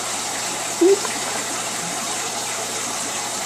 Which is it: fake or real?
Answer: fake